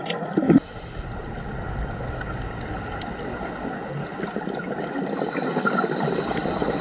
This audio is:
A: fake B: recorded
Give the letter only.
B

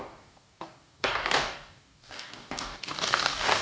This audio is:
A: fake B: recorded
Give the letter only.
A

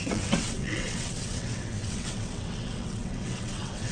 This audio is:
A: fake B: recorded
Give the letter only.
A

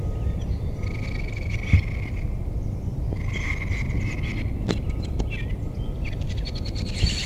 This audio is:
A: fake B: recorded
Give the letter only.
B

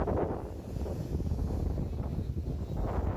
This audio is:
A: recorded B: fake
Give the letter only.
A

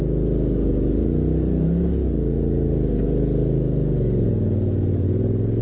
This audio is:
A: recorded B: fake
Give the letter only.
A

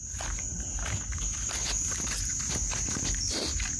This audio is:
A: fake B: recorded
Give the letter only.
B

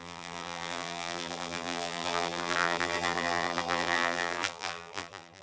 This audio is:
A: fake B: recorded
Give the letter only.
A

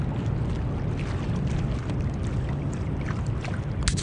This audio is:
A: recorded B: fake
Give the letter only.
A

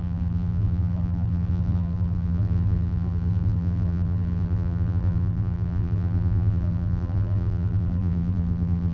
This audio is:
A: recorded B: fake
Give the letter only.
B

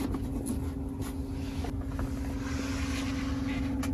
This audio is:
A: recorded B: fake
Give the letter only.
A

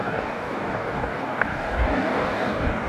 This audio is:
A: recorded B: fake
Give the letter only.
B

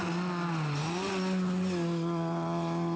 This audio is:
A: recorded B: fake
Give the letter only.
A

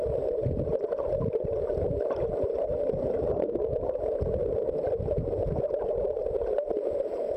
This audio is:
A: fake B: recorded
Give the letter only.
B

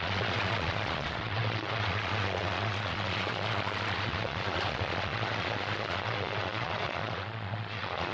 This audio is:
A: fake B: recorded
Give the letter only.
A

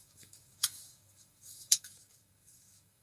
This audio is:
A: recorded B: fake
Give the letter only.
B